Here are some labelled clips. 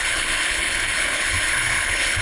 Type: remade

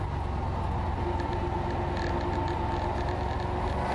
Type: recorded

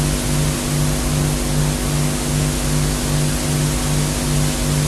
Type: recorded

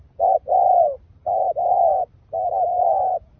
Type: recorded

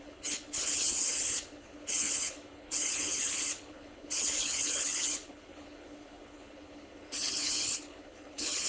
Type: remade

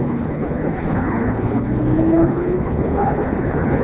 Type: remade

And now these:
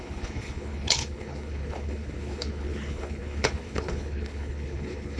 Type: remade